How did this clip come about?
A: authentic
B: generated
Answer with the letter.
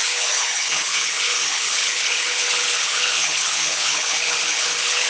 B